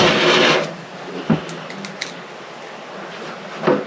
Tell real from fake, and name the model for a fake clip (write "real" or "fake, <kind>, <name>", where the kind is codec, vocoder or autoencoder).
real